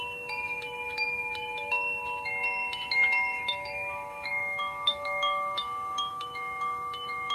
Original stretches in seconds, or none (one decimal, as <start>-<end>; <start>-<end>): none